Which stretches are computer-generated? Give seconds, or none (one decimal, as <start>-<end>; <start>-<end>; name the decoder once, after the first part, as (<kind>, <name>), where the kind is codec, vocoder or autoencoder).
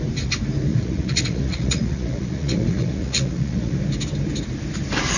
0.7-3.8 (vocoder, Vocos)